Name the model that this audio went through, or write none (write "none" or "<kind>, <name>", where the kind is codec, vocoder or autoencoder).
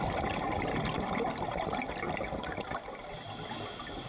none